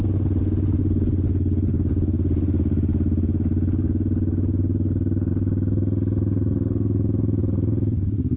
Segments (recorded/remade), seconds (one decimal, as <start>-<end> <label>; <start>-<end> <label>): 0.0-7.4 recorded; 7.4-8.0 remade; 8.0-8.4 recorded